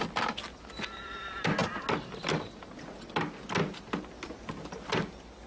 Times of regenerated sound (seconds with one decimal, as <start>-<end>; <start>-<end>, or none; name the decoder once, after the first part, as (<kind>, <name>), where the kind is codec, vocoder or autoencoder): none